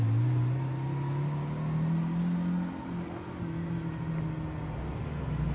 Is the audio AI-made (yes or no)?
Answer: no